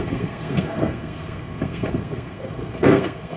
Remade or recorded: remade